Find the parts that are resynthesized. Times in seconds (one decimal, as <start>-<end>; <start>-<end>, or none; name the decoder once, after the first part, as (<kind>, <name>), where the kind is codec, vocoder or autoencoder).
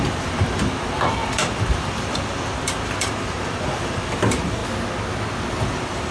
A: 0.0-4.6 (vocoder, BigVGAN v2); 5.6-6.1